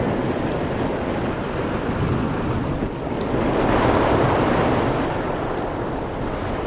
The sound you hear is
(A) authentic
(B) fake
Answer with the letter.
A